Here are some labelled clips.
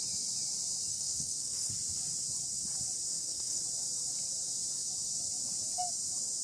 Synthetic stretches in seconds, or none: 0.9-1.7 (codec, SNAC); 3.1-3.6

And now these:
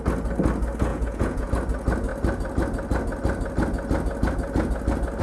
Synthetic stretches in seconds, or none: 0.9-1.5 (vocoder, Vocos)

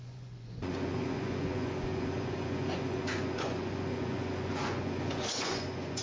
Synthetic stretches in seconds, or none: 0.0-6.0 (vocoder, Vocos)

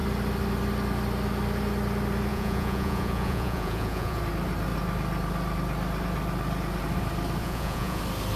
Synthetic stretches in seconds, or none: 2.3-4.2 (vocoder, Vocos); 7.4-8.0

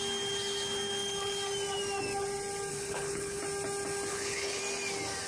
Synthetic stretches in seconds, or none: 2.7-3.4 (codec, HILCodec); 4.1-4.6

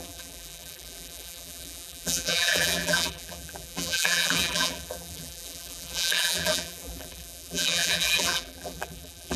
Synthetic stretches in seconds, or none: 0.0-9.4 (vocoder, BigVGAN v2)

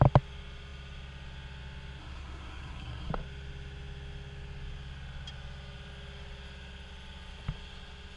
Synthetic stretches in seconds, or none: 2.0-3.1 (codec, SNAC)

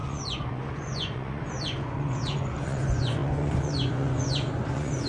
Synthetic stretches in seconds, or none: 0.0-5.1 (vocoder, Vocos)